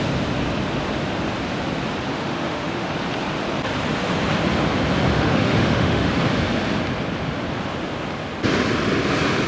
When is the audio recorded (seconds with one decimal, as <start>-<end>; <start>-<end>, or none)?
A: 0.0-2.1; 2.9-5.1; 6.1-9.5